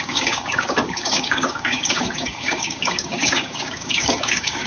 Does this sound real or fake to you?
fake